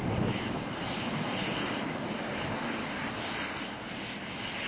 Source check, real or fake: real